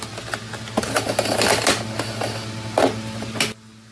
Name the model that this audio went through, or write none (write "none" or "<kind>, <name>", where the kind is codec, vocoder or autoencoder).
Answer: none